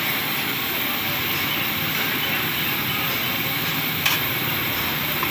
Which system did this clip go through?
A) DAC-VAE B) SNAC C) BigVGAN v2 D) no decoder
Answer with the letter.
D